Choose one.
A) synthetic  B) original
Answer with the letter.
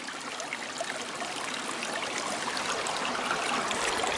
B